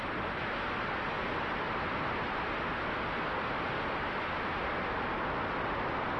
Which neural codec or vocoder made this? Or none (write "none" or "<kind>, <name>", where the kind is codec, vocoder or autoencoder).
none